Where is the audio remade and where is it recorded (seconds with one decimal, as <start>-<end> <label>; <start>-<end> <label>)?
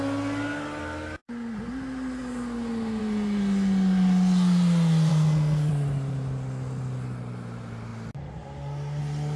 0.0-5.1 recorded; 5.1-5.7 remade; 5.7-9.4 recorded